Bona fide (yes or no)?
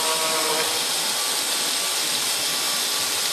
yes